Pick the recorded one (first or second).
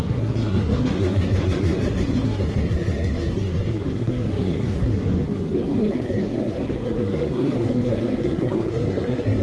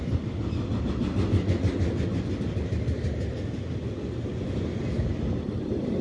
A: second